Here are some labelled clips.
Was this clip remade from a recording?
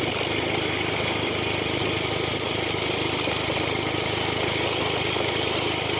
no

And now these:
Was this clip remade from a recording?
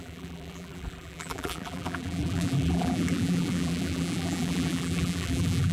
yes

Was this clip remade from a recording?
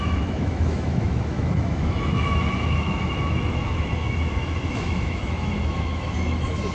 yes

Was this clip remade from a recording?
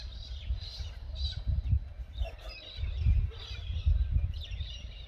no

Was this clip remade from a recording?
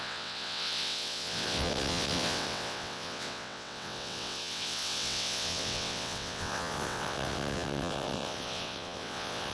yes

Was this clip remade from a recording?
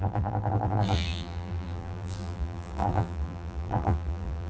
yes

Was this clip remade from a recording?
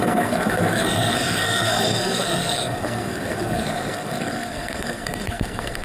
yes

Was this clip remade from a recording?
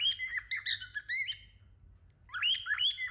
no